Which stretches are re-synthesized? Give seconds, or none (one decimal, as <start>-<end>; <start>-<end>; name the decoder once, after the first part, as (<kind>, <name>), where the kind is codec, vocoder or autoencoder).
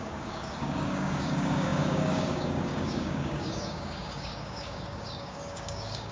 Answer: 0.0-6.1 (codec, DAC)